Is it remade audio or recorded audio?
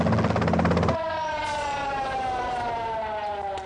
recorded